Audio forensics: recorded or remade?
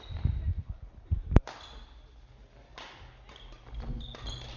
recorded